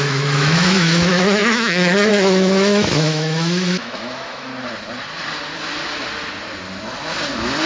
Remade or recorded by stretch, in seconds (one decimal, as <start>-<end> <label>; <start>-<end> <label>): 0.0-4.5 remade; 4.5-7.7 recorded